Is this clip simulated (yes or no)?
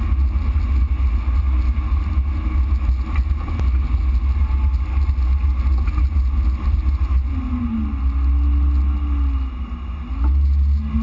no